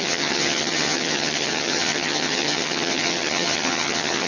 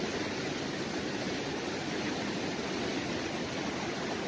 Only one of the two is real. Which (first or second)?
second